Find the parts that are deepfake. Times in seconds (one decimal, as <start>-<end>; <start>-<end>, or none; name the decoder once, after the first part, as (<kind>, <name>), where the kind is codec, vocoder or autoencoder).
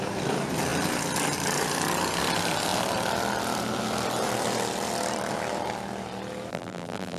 6.5-7.2 (vocoder, BigVGAN v2)